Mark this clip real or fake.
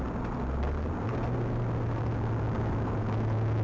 real